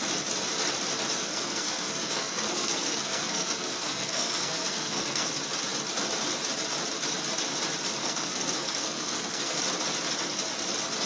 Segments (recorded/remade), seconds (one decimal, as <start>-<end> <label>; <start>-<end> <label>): 0.0-1.2 recorded; 1.2-5.3 remade; 5.3-8.0 recorded; 8.0-9.6 remade; 9.6-11.1 recorded